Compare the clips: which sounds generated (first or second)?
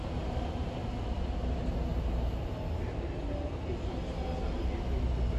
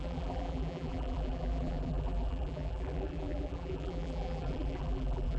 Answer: second